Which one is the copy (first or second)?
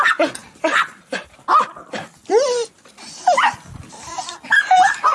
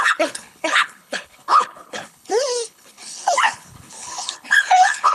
second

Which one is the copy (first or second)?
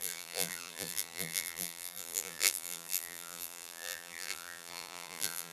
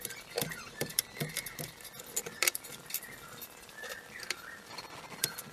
first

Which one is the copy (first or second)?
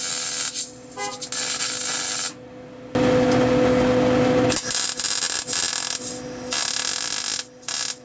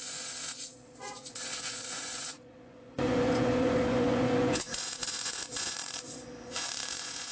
second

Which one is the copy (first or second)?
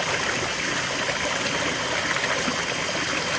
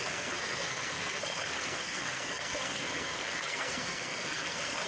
second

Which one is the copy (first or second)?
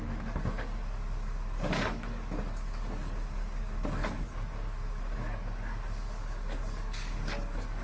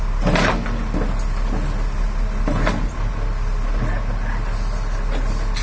first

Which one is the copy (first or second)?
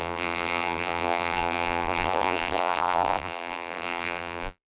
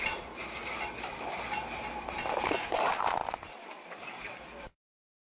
first